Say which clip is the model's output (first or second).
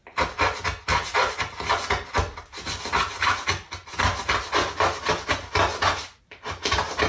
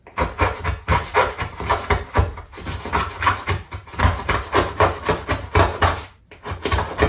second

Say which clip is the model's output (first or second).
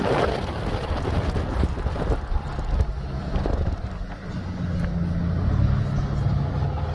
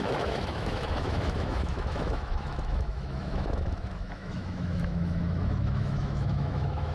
second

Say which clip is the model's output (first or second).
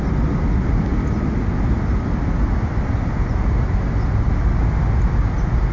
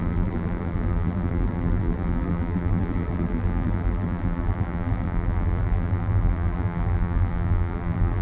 second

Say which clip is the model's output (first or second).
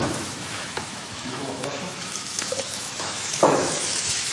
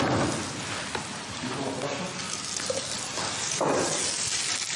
first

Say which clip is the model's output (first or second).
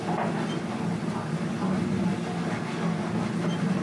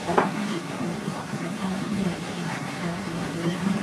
second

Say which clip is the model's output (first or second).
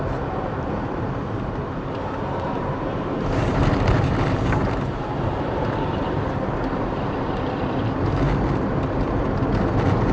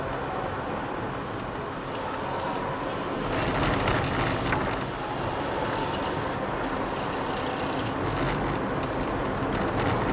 first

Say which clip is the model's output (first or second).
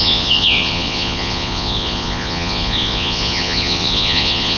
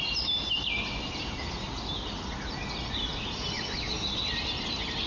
first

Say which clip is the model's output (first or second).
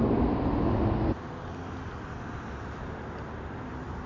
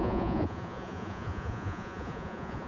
second